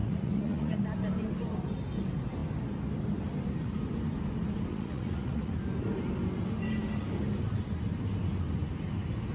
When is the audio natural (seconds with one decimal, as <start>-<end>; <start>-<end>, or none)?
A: 0.8-4.7; 5.5-9.3